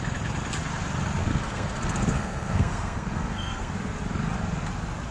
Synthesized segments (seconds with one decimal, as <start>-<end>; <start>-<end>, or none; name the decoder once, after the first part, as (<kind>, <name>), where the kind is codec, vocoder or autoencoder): 1.2-3.7 (codec, SNAC)